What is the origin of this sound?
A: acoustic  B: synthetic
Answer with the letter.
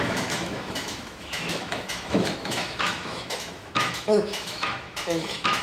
B